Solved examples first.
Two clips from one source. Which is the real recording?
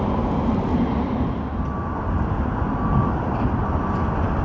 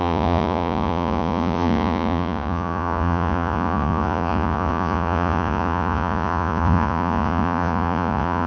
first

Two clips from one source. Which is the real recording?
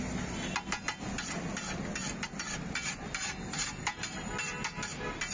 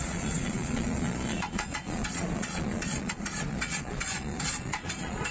first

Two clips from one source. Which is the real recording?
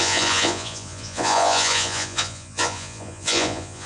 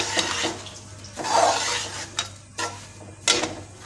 second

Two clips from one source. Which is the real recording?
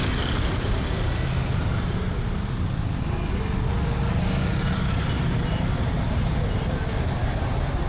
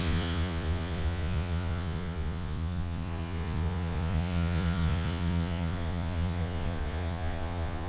first